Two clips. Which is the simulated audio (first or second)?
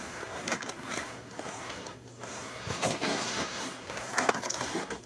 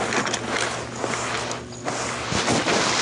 first